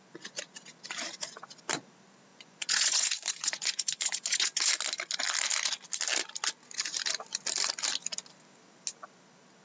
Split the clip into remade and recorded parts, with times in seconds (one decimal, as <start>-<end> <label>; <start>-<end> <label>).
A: 0.0-2.3 recorded; 2.3-4.7 remade; 4.7-9.6 recorded